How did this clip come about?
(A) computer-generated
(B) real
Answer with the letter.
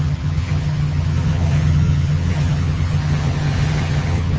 A